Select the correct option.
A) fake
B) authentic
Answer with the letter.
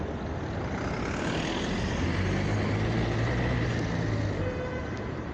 B